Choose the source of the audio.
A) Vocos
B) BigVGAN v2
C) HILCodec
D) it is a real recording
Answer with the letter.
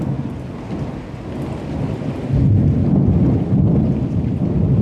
D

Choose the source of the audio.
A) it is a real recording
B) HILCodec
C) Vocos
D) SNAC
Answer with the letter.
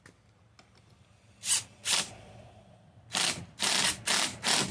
A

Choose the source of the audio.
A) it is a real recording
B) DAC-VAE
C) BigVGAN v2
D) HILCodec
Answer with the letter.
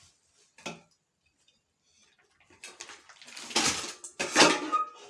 A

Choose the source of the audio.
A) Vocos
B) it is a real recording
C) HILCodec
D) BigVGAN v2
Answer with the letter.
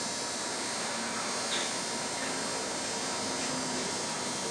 B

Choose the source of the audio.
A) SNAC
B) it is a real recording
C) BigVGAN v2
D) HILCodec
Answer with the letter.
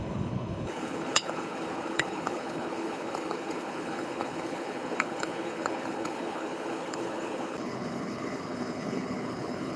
D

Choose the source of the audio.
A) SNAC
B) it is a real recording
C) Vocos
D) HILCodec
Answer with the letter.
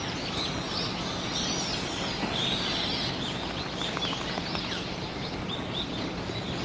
B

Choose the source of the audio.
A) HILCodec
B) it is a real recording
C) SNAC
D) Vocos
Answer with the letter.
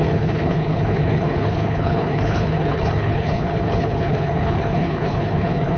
A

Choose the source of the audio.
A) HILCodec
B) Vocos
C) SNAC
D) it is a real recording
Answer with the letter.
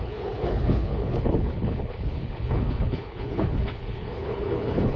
A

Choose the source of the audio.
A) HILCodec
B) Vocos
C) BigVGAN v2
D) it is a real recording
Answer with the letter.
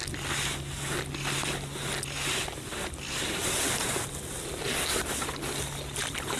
D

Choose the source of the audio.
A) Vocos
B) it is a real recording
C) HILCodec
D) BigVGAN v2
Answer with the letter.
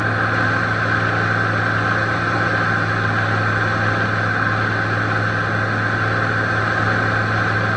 B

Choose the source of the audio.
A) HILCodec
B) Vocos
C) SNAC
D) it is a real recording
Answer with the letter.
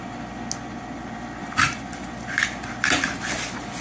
D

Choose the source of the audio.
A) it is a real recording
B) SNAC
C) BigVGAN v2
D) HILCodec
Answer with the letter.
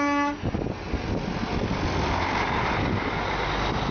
A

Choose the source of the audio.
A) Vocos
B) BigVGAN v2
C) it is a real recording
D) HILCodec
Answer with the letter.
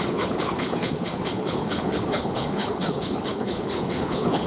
D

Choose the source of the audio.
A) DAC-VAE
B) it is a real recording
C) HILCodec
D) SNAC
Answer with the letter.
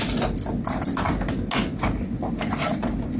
B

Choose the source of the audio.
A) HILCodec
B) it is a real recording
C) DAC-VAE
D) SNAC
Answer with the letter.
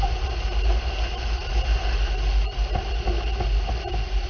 B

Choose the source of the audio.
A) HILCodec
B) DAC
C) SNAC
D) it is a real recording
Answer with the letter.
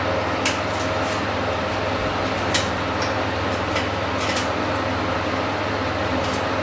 D